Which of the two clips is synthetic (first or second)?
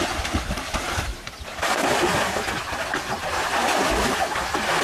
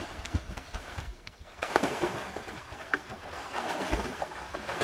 second